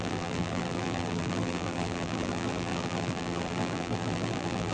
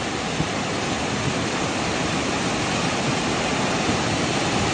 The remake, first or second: first